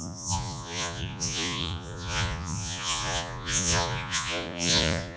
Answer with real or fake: fake